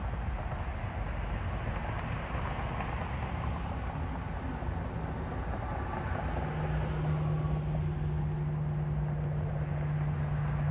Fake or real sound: real